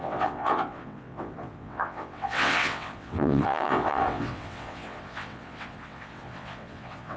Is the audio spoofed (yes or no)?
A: yes